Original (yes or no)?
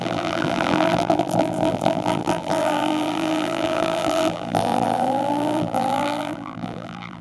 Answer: no